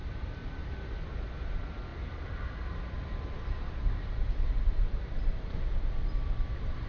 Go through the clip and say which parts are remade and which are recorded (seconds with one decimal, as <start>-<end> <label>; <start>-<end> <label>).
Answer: 0.0-6.9 recorded